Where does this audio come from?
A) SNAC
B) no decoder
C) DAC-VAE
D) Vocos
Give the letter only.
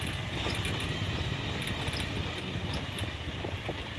B